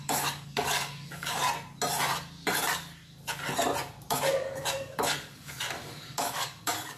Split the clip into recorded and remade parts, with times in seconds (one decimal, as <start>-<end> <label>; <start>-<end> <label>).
0.0-1.4 remade; 1.4-4.1 recorded; 4.1-7.0 remade